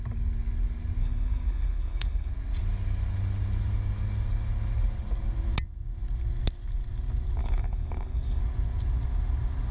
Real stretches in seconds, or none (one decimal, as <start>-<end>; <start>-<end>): 0.0-1.0; 2.3-7.4; 8.4-9.7